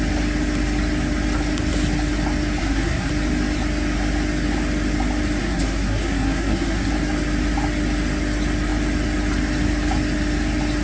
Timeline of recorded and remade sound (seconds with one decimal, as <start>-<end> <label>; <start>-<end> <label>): 0.0-2.6 recorded; 2.6-3.1 remade; 3.1-5.4 recorded; 5.4-6.9 remade; 6.9-10.8 recorded